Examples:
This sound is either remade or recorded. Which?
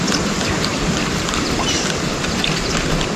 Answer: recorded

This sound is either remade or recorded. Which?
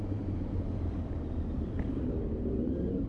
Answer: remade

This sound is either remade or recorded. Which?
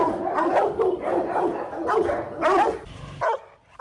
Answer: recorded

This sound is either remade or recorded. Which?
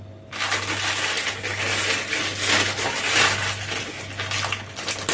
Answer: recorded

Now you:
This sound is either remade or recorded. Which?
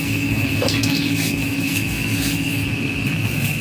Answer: remade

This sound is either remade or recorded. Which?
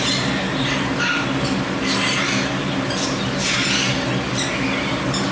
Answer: recorded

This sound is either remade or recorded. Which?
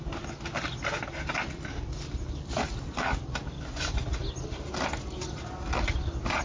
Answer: recorded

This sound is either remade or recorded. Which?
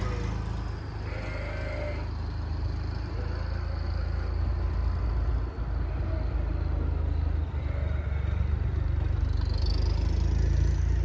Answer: recorded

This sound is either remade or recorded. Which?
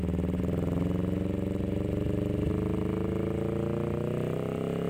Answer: recorded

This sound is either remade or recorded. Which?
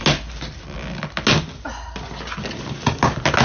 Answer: recorded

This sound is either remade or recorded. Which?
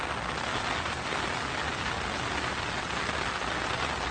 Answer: recorded